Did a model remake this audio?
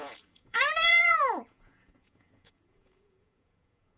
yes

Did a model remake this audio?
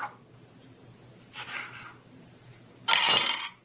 no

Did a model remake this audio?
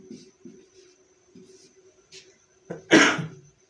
no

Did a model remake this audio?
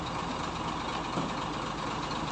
no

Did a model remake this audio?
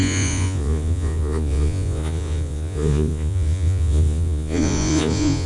yes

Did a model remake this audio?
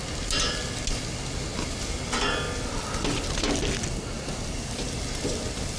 no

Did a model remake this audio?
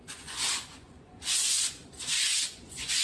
yes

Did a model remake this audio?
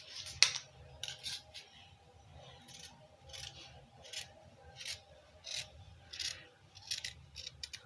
no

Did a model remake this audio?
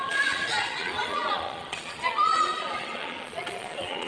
yes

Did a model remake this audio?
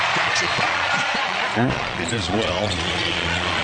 yes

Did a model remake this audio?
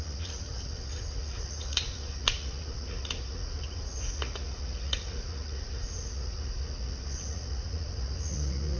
yes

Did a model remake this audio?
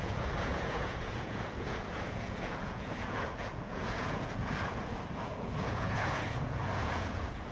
yes